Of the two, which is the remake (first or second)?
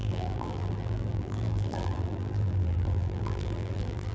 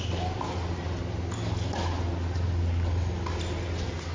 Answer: first